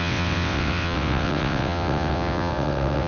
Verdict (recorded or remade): remade